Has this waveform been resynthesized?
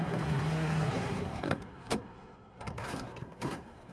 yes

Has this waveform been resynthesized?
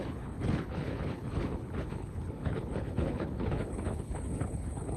yes